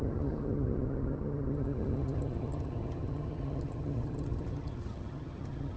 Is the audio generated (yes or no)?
yes